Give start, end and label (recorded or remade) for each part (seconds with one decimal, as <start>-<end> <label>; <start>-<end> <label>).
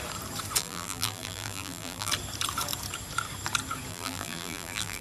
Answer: 0.0-0.6 recorded; 0.6-2.1 remade; 2.1-3.9 recorded; 3.9-5.0 remade